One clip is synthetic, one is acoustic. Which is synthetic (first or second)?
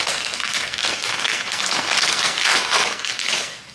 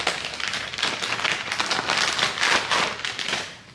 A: first